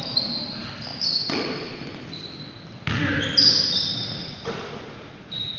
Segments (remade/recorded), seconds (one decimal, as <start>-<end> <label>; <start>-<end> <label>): 0.0-4.2 recorded; 4.2-5.6 remade